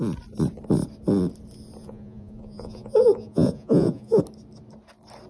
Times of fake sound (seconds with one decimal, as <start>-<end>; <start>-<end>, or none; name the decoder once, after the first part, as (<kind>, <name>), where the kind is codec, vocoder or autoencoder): 1.8-4.2 (vocoder, Vocos)